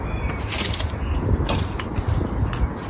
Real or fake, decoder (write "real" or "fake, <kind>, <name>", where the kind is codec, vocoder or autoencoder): real